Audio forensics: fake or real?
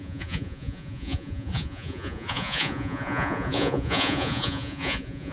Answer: fake